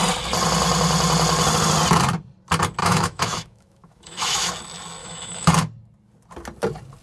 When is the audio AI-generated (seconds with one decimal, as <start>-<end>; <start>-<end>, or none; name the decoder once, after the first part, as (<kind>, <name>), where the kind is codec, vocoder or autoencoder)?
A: 2.8-4.5 (autoencoder, DAC-VAE); 5.0-5.5